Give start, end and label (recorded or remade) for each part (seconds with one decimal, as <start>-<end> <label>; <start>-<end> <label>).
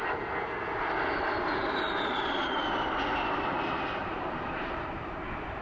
0.0-1.6 recorded; 1.6-2.6 remade; 2.6-4.0 recorded; 4.0-5.6 remade